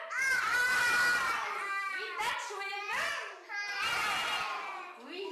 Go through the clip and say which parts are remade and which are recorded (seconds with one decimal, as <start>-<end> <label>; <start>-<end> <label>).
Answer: 0.0-5.3 recorded